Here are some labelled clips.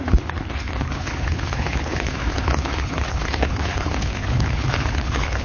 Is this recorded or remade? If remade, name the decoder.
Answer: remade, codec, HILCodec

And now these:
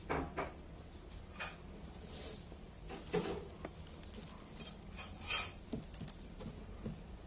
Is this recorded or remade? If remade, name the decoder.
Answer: recorded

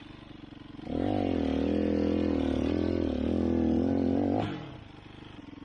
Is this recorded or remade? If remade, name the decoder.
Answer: recorded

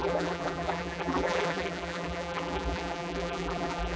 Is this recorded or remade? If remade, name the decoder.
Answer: remade, vocoder, BigVGAN v2